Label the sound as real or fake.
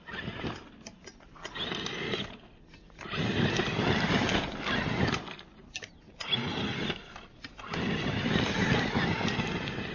real